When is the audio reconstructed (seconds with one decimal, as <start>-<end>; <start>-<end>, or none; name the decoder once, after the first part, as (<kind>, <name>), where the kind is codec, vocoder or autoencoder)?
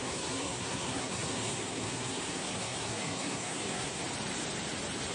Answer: 0.0-4.0 (codec, SNAC)